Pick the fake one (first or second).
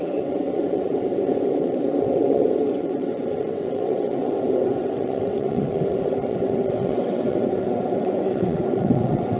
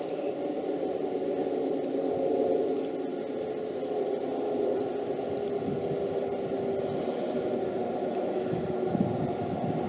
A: first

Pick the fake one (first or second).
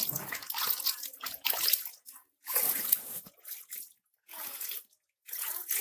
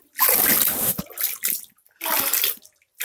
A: first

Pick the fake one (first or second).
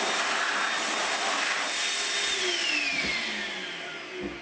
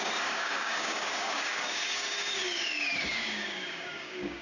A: second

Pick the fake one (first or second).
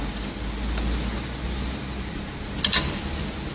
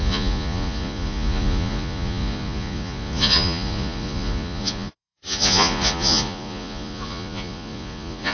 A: second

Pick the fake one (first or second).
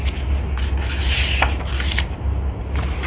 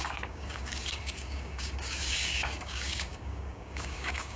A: second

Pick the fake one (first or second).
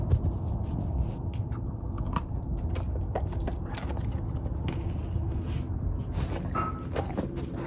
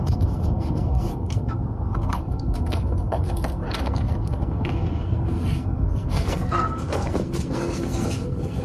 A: second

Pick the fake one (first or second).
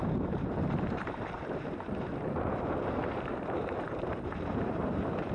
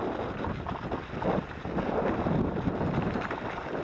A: first